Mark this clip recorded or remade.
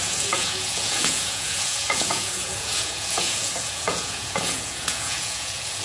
remade